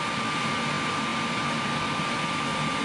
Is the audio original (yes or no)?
yes